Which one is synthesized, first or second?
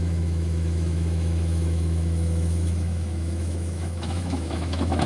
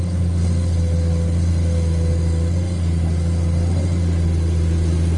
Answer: first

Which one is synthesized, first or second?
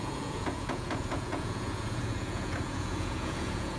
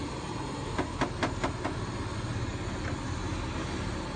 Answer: first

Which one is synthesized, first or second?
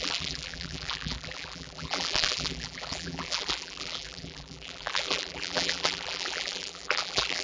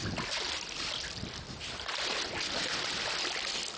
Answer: first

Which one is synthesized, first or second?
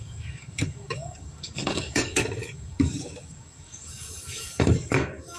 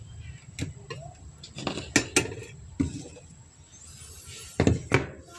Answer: first